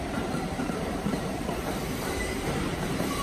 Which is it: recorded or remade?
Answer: remade